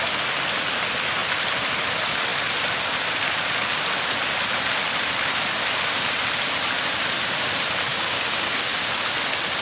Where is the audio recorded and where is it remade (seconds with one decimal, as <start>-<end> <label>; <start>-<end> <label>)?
0.0-7.9 recorded; 7.9-8.7 remade; 8.7-9.6 recorded